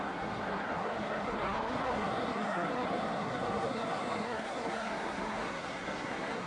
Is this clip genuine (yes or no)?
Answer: no